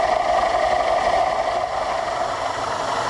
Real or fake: real